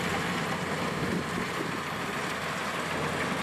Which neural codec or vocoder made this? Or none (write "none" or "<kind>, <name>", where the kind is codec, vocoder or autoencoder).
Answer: none